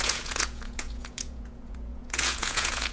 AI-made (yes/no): yes